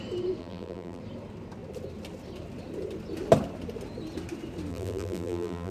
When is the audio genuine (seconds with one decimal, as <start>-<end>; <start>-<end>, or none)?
0.0-0.4; 1.0-4.7